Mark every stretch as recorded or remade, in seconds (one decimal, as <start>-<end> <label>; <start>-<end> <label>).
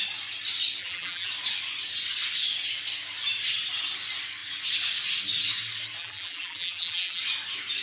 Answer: 0.0-0.8 recorded; 0.8-1.3 remade; 1.3-6.0 recorded; 6.0-7.2 remade; 7.2-7.8 recorded